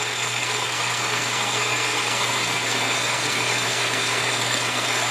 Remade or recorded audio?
remade